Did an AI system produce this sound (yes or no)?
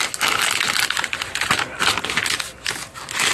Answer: no